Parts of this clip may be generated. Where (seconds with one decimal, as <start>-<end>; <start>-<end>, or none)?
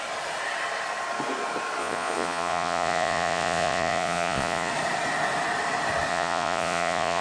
1.8-4.7; 6.1-7.2